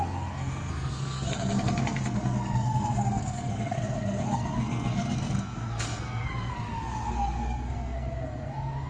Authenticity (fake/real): fake